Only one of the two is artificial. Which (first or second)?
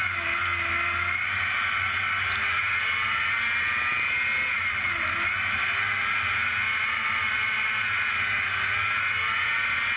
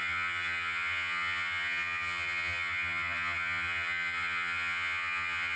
second